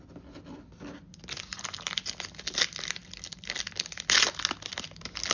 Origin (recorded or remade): recorded